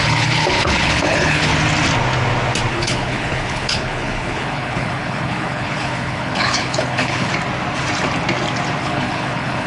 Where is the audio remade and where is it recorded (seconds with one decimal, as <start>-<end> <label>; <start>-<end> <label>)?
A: 0.0-1.5 remade; 1.5-2.7 recorded; 2.7-7.3 remade; 7.3-8.8 recorded; 8.8-9.7 remade